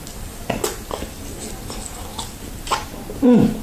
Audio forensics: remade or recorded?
recorded